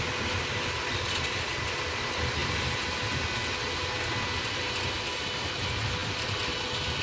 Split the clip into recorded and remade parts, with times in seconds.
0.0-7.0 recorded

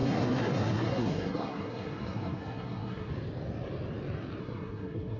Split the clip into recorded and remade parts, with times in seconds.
0.0-3.1 remade; 3.1-4.4 recorded; 4.4-5.2 remade

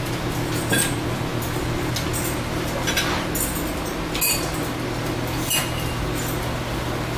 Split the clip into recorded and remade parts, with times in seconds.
0.0-7.2 recorded

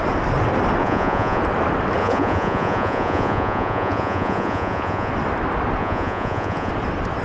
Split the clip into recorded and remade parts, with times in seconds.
0.0-0.8 recorded; 0.8-1.4 remade; 1.4-2.0 recorded; 2.0-5.1 remade; 5.1-5.8 recorded; 5.8-6.7 remade; 6.7-7.2 recorded

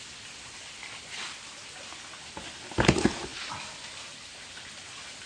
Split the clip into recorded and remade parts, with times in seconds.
0.0-5.3 recorded

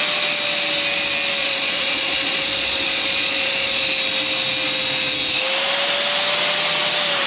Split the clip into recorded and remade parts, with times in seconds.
0.0-1.4 recorded; 1.4-3.8 remade; 3.8-7.3 recorded